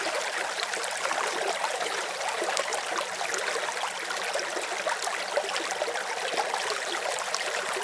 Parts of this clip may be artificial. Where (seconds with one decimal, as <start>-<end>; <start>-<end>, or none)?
0.0-2.7; 6.6-7.8